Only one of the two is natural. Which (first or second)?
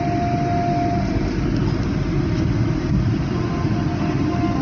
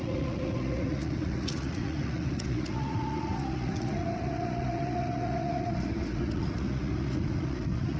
first